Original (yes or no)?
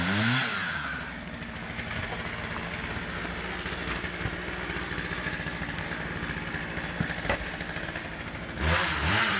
yes